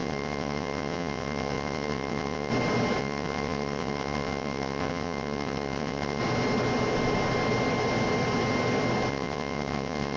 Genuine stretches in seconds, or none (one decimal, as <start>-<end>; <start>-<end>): 2.5-3.0; 6.2-9.1